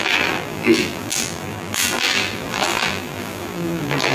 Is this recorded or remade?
remade